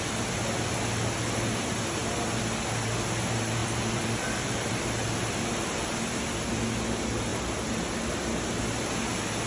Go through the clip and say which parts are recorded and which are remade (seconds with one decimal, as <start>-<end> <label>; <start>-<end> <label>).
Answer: 0.0-3.6 recorded; 3.6-4.7 remade; 4.7-7.3 recorded; 7.3-7.8 remade; 7.8-9.5 recorded